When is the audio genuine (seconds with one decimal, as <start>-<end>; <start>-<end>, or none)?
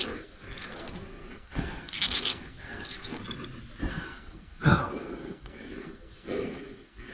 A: 3.2-3.9